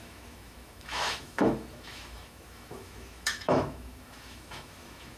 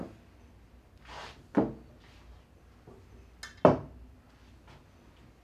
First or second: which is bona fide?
second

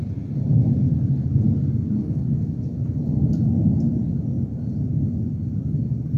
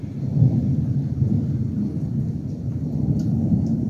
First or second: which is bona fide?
first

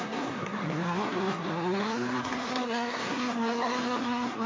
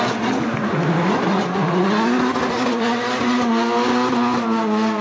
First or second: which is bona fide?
second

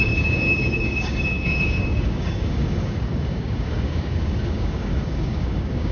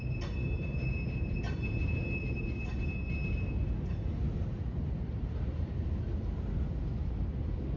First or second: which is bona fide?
second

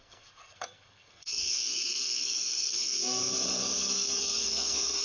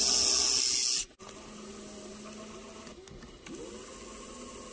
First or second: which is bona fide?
second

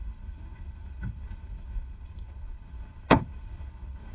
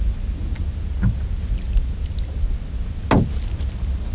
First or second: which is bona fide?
second